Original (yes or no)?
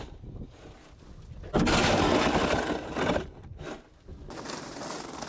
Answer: yes